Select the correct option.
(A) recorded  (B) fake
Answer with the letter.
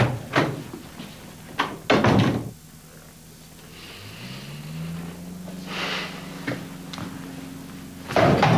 A